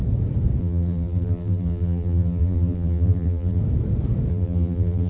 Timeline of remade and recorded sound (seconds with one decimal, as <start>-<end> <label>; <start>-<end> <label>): 0.0-0.6 recorded; 0.6-3.6 remade; 3.6-4.3 recorded; 4.3-5.1 remade